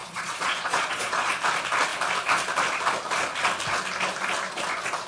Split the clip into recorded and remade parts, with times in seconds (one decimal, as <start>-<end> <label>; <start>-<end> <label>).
0.0-1.3 remade; 1.3-5.1 recorded